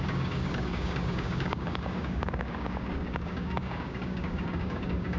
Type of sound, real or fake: fake